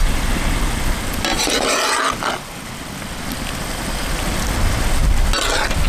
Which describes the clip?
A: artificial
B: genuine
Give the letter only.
B